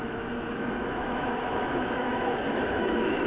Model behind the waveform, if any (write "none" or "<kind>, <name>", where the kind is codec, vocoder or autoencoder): autoencoder, DAC-VAE